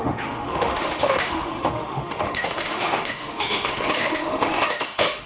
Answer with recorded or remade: remade